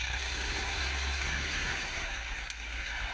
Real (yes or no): no